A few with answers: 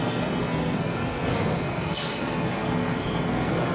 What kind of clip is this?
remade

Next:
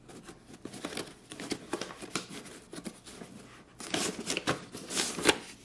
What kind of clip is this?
recorded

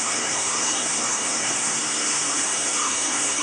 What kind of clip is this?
remade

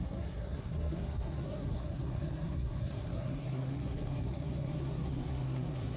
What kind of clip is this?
remade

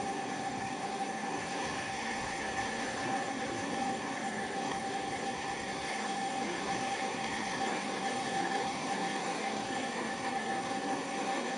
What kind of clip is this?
remade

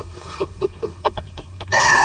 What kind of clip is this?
remade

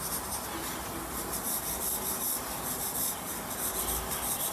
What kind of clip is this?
recorded